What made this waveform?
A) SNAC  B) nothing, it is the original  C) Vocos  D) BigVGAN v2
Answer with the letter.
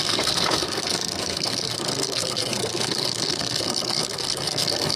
A